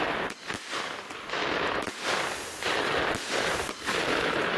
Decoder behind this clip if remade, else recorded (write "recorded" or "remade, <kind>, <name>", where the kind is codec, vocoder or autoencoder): recorded